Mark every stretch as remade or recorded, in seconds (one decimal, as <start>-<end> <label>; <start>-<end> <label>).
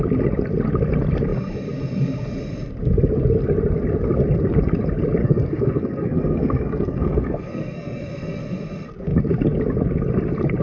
0.0-5.2 recorded; 5.2-8.4 remade; 8.4-10.6 recorded